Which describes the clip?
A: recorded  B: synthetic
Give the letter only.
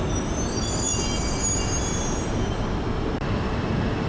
A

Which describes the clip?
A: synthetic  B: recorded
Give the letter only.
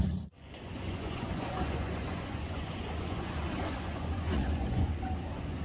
A